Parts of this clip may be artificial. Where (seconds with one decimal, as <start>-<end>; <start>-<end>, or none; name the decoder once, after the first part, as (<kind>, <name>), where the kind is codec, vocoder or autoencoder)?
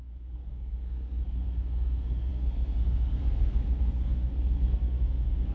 0.0-5.5 (codec, SNAC)